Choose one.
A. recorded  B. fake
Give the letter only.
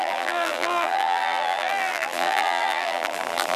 B